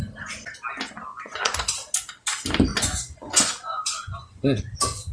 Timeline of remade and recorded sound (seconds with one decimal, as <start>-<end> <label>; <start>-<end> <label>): 0.0-1.1 recorded; 1.1-1.7 remade; 1.7-2.7 recorded; 2.7-4.6 remade; 4.6-5.1 recorded